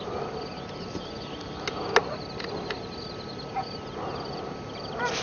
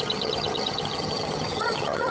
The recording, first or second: first